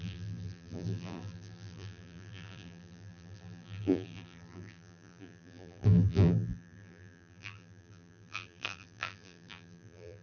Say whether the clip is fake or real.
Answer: fake